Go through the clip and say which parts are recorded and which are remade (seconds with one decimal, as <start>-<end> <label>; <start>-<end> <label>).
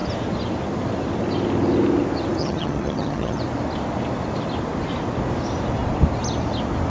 0.0-2.4 recorded; 2.4-3.4 remade; 3.4-6.9 recorded